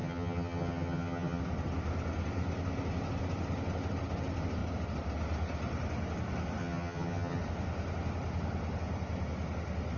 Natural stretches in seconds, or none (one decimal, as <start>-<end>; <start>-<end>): 1.4-6.6; 7.4-10.0